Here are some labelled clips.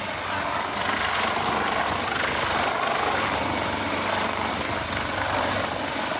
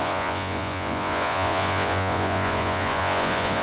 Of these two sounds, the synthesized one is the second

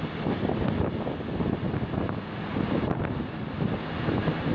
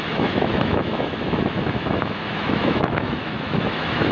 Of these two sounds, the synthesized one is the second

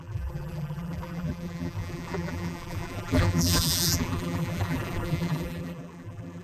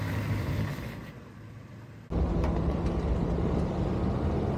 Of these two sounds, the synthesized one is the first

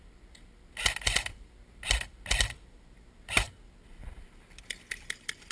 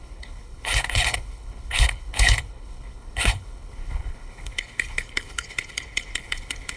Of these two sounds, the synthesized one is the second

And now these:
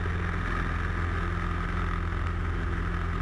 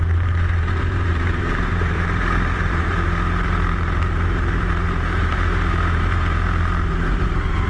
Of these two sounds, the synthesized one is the second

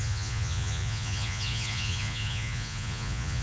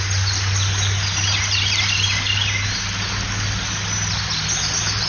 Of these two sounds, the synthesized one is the first